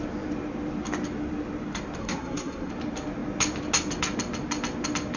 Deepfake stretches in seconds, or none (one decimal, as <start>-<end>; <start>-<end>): 2.0-2.7